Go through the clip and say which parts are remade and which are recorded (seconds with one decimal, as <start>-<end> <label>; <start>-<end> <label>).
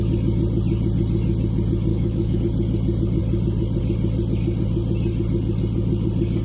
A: 0.0-1.9 recorded; 1.9-2.4 remade; 2.4-6.4 recorded